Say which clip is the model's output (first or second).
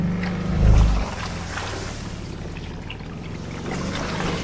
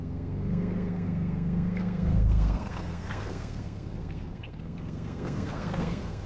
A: second